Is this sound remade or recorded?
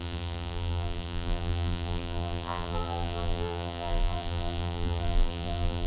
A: remade